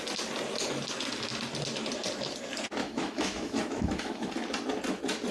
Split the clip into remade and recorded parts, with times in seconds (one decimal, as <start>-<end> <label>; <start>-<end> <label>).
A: 0.0-2.8 recorded; 2.8-4.3 remade; 4.3-5.3 recorded